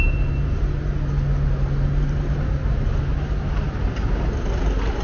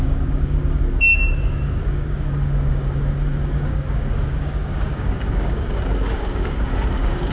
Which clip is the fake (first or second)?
second